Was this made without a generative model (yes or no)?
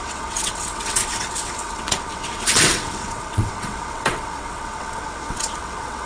no